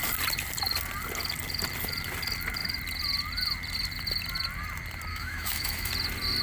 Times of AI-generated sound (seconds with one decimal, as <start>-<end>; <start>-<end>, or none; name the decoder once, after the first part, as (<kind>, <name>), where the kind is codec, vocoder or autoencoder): 5.1-5.9 (autoencoder, DAC-VAE)